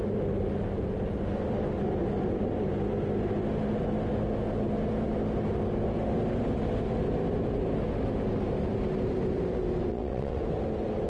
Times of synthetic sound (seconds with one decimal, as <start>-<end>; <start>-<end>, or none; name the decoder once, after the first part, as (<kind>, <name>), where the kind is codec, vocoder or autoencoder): 9.9-10.4 (vocoder, WaveNeXt)